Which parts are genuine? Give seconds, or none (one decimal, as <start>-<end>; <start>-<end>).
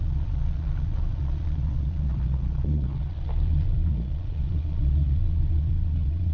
none